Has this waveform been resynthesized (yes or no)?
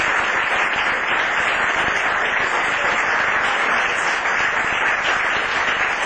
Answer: no